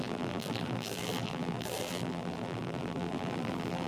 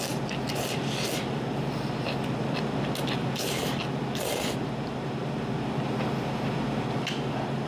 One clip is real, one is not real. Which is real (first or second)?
second